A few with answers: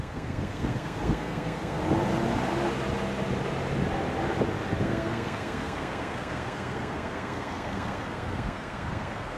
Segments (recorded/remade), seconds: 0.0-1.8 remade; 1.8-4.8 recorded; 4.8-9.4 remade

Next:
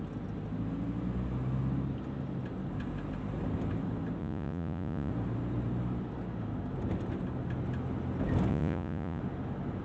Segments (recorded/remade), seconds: 0.0-4.2 recorded; 4.2-5.1 remade; 5.1-8.5 recorded; 8.5-9.2 remade; 9.2-9.8 recorded

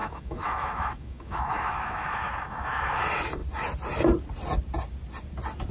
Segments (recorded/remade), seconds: 0.0-3.0 remade; 3.0-5.7 recorded

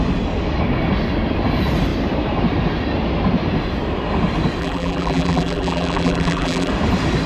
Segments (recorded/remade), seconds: 0.0-4.6 recorded; 4.6-6.7 remade; 6.7-7.3 recorded